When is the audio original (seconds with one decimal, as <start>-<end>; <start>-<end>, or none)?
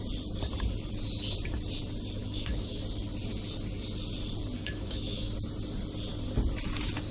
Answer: 0.0-2.2; 2.8-4.6; 5.3-7.1